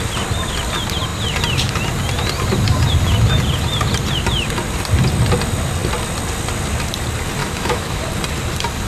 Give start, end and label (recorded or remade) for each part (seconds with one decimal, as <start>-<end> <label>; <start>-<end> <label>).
0.0-7.4 recorded; 7.4-8.0 remade; 8.0-8.9 recorded